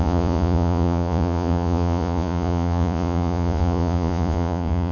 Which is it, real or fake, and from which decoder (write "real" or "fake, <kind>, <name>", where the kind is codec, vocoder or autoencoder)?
fake, vocoder, Vocos